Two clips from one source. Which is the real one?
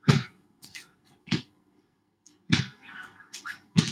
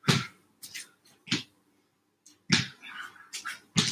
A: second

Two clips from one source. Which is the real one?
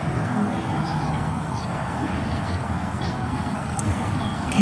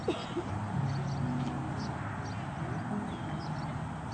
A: second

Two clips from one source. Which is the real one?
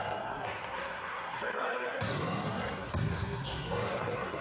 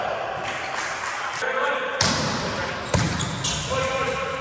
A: second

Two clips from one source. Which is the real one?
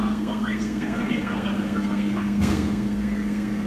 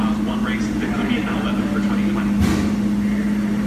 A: second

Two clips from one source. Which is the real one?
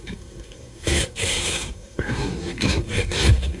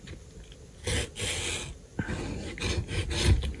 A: second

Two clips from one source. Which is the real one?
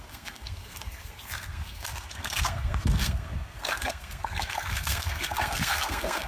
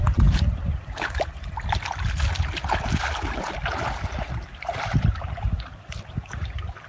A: second